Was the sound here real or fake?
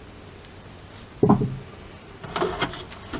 real